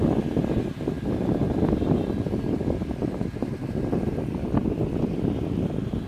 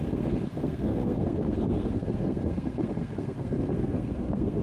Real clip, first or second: first